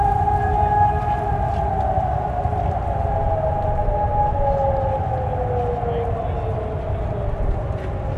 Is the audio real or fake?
real